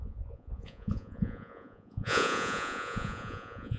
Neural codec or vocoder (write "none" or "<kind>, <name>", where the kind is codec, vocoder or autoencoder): vocoder, Vocos